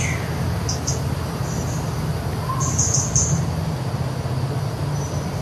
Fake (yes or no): no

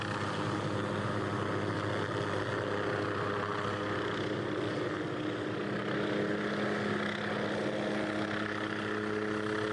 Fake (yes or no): no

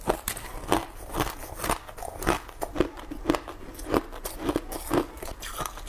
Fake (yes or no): no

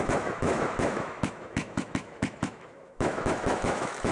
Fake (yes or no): yes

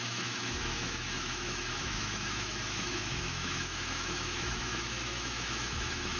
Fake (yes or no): yes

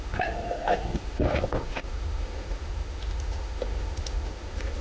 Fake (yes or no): yes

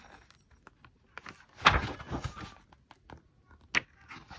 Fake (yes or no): no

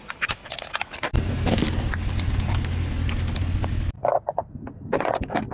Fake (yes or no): no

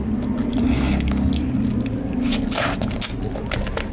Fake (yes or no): no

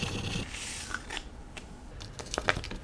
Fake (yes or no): no